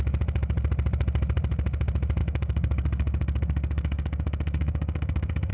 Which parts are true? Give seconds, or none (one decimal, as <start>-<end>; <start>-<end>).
0.0-2.2